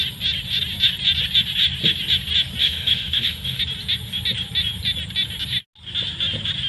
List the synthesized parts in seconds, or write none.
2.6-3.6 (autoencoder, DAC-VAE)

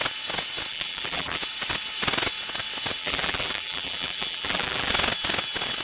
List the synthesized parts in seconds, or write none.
0.7-1.4 (vocoder, BigVGAN v2); 3.0-4.9

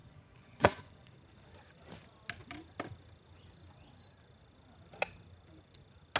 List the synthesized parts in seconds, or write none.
0.0-1.1 (vocoder, Vocos)

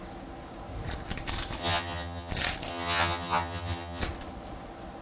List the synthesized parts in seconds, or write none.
1.6-2.3 (vocoder, HiFi-GAN); 2.7-4.0